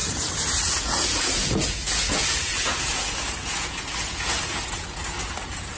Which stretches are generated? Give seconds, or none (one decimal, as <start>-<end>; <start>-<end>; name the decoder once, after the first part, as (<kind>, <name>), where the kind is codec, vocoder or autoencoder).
0.7-5.8 (vocoder, Vocos)